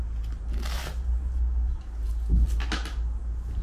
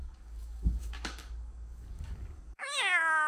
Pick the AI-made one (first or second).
second